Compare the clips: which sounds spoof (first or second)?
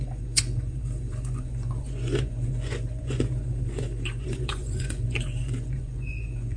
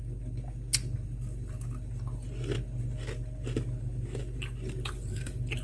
first